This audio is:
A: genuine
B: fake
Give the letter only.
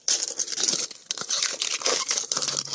B